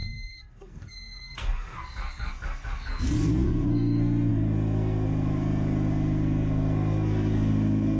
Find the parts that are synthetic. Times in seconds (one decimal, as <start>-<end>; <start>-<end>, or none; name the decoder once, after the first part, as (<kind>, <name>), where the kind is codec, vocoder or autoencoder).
0.0-8.0 (codec, SNAC)